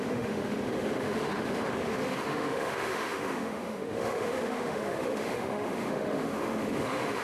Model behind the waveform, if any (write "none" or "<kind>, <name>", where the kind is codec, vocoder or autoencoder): autoencoder, DAC-VAE